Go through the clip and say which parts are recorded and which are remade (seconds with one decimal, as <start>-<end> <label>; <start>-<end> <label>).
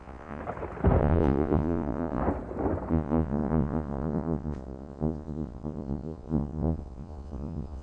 0.0-0.4 remade; 0.4-1.0 recorded; 1.0-2.2 remade; 2.2-2.9 recorded; 2.9-7.8 remade